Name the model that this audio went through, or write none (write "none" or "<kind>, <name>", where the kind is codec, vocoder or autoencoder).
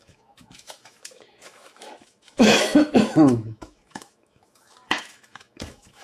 autoencoder, DAC-VAE